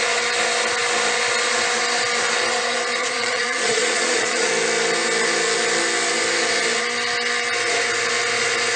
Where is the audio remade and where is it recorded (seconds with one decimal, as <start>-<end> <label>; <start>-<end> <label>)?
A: 0.0-3.0 recorded; 3.0-4.5 remade; 4.5-8.8 recorded